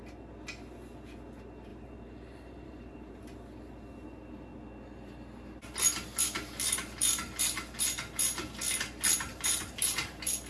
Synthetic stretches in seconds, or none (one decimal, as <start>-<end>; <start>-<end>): 1.7-3.2; 9.3-10.1